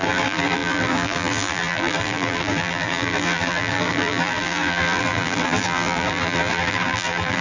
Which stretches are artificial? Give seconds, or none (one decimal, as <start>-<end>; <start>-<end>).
0.0-7.4